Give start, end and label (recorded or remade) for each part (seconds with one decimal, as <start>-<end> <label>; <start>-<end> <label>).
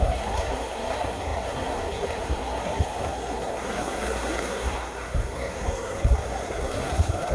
0.0-7.3 remade